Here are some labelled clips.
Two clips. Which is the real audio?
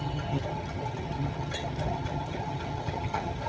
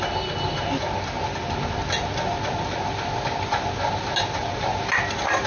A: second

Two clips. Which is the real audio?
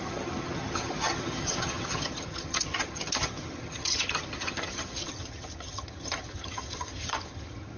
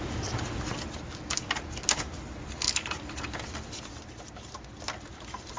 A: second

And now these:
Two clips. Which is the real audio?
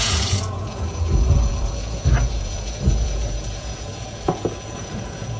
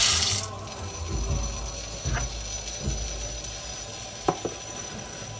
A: second